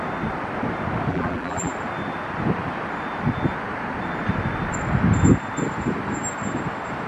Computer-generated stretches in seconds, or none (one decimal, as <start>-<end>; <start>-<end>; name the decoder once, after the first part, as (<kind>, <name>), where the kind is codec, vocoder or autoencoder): 1.1-1.7 (vocoder, BigVGAN v2)